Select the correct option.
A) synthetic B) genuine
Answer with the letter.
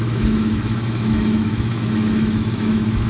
A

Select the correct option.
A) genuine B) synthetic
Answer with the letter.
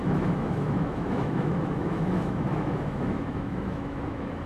B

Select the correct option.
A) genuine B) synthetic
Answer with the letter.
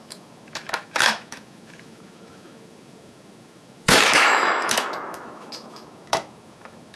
B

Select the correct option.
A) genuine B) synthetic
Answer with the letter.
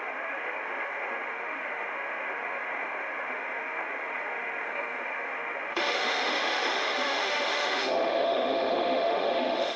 B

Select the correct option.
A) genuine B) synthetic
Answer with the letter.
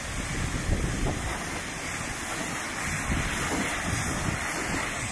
A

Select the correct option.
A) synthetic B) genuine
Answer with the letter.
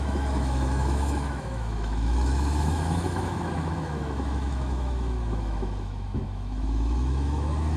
A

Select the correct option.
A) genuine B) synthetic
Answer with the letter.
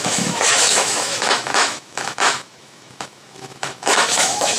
B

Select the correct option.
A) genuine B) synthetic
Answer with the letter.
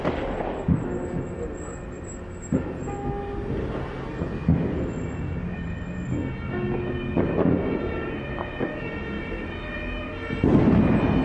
A